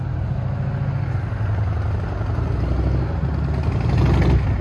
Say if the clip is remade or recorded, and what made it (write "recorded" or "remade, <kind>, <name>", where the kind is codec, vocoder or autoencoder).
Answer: recorded